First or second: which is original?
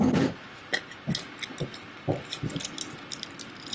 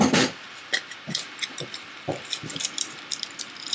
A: first